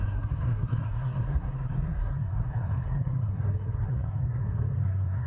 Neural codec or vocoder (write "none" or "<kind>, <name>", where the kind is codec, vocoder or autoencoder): codec, SNAC